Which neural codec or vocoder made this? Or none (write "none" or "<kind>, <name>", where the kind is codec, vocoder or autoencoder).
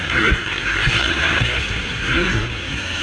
codec, SNAC